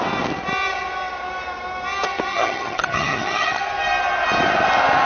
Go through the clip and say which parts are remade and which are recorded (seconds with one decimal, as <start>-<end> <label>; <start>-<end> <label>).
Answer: 0.0-2.3 recorded; 2.3-3.6 remade; 3.6-5.0 recorded